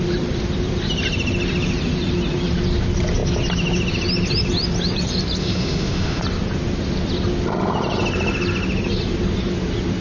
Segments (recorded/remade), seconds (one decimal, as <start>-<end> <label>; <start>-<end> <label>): 0.0-5.4 recorded; 5.4-6.2 remade; 6.2-10.0 recorded